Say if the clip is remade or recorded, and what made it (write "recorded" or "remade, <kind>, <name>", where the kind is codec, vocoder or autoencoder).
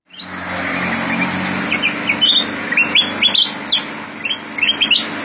recorded